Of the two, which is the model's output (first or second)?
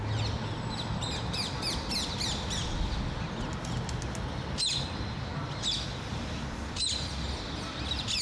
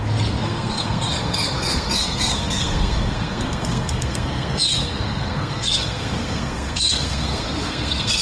second